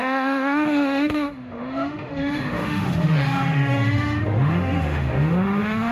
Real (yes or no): no